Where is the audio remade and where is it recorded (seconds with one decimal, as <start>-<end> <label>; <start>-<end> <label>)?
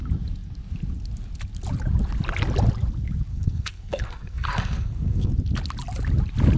0.0-3.3 recorded; 3.3-5.3 remade; 5.3-6.6 recorded